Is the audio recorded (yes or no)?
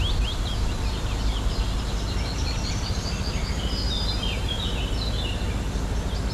yes